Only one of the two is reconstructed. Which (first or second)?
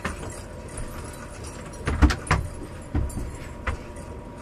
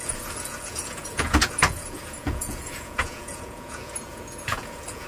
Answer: second